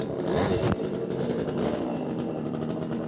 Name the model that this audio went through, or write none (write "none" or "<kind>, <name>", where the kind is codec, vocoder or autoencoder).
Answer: none